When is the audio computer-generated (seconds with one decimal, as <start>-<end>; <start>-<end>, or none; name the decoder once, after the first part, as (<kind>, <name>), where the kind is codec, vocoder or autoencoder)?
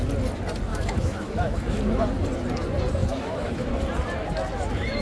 0.7-2.0 (autoencoder, DAC-VAE); 3.0-3.7